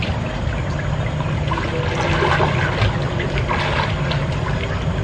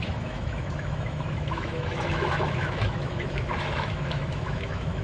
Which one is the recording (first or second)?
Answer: first